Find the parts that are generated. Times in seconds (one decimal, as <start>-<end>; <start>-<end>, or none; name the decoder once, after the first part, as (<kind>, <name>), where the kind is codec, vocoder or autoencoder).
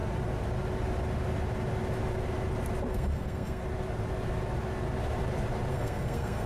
2.9-3.6 (codec, SNAC); 5.7-6.5